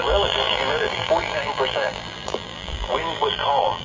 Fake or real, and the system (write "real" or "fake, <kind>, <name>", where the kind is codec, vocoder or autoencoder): fake, vocoder, BigVGAN v2